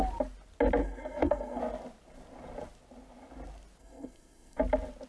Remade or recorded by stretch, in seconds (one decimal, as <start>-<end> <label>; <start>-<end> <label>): 0.0-0.8 recorded; 0.8-1.6 remade; 1.6-3.8 recorded; 3.8-4.6 remade; 4.6-5.1 recorded